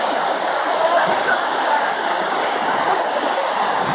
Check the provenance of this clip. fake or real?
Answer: fake